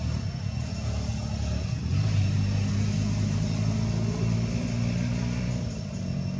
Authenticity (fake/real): real